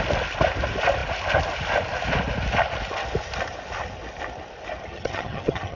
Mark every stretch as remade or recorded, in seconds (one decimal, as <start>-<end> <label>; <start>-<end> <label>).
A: 0.0-4.8 recorded; 4.8-5.8 remade